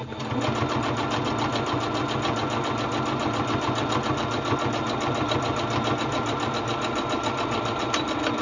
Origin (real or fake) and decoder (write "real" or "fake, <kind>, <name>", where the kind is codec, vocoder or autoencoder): real